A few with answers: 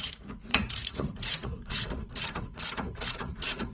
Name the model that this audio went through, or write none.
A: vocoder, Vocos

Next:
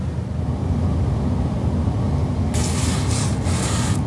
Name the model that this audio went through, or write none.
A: none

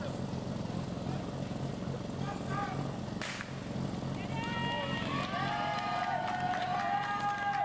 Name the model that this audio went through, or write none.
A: none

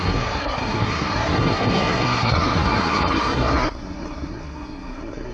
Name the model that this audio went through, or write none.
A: codec, SNAC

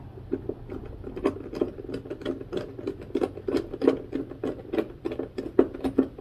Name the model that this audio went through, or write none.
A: none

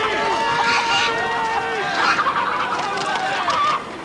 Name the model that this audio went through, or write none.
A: none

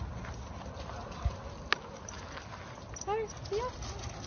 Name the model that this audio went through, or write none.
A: none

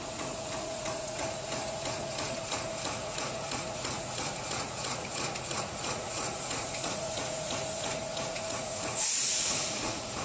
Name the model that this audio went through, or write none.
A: vocoder, Vocos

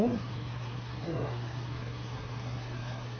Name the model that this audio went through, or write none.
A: codec, SNAC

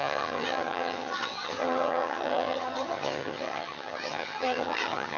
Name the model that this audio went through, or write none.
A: vocoder, HiFi-GAN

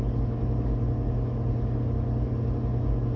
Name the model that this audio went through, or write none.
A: none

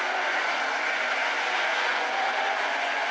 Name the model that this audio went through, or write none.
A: vocoder, Vocos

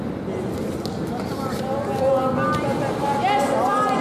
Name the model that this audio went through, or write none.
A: none